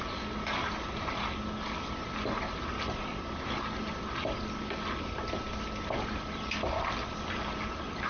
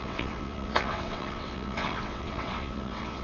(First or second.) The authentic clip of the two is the first